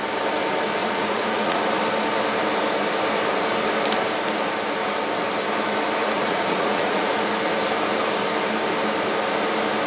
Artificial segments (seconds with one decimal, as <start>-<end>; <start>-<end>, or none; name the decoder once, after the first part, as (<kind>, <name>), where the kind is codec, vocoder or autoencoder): 0.8-1.6 (vocoder, Vocos); 6.0-7.1